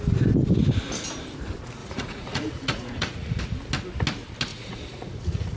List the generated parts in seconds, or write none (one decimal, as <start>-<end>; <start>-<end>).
1.8-3.4; 4.5-5.6